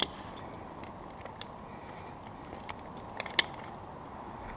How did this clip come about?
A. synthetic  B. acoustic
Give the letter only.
B